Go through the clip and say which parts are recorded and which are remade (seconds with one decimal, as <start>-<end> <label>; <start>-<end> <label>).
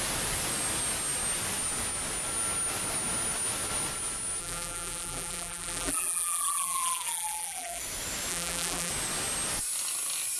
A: 0.0-4.4 recorded; 4.4-7.8 remade; 7.8-8.3 recorded; 8.3-8.9 remade; 8.9-10.4 recorded